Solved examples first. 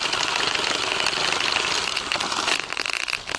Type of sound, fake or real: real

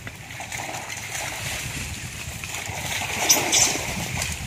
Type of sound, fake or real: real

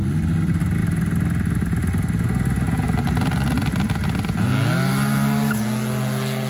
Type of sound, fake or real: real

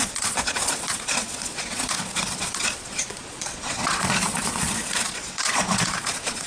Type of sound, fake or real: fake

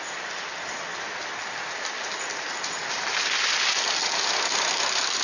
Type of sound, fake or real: real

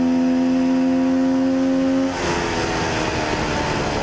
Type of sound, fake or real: real